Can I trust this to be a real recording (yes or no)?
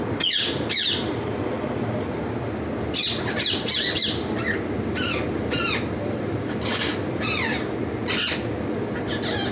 yes